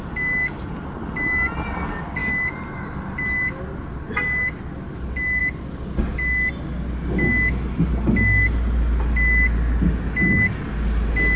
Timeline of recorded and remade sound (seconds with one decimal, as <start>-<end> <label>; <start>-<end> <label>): 0.0-11.4 recorded